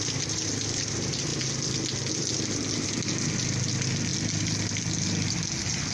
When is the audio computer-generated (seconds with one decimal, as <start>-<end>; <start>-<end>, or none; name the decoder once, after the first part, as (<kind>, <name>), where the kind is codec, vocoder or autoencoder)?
none